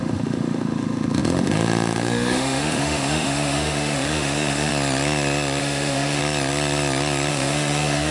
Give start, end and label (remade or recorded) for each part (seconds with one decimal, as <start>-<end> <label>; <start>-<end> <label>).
0.0-4.7 remade; 4.7-5.6 recorded; 5.6-6.2 remade; 6.2-7.3 recorded; 7.3-8.1 remade